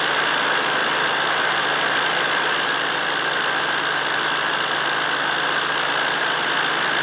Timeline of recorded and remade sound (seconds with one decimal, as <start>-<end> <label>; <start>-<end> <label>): 0.0-0.8 recorded; 0.8-3.5 remade; 3.5-7.0 recorded